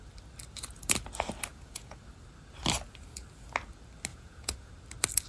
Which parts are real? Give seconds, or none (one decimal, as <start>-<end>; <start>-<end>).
0.0-1.5; 2.0-4.1; 4.7-5.3